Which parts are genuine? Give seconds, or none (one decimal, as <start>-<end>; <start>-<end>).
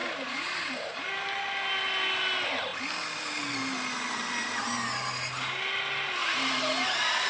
1.4-6.2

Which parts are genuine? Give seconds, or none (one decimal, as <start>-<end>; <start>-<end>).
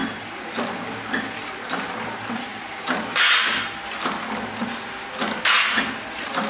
0.7-2.5; 3.5-6.5